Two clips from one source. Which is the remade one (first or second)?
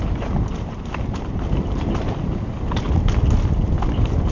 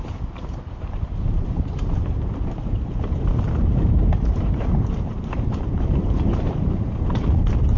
second